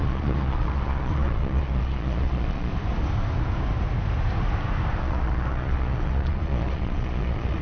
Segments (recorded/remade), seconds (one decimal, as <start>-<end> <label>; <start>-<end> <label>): 0.0-2.7 remade; 2.7-5.0 recorded; 5.0-7.6 remade